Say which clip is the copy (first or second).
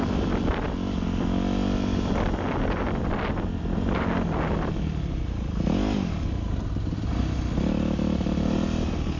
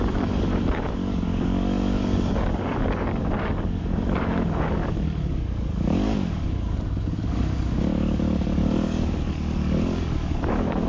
second